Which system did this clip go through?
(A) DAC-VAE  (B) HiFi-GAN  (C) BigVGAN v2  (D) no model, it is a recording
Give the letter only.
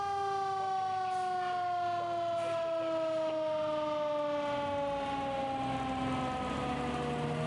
D